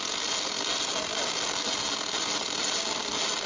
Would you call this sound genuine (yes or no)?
yes